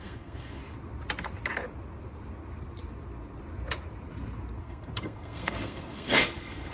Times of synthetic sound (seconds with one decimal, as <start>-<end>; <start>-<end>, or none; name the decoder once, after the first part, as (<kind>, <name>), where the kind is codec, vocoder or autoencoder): 0.0-0.6 (codec, SNAC); 4.6-6.7